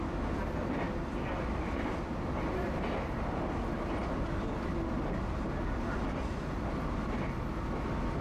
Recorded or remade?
recorded